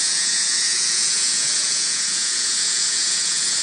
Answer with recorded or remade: remade